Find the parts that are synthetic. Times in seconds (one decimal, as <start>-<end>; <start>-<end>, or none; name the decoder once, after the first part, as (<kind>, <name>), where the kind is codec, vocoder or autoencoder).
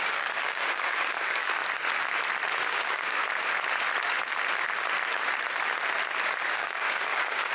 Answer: 0.0-1.6 (codec, DAC); 2.6-3.2; 6.5-7.5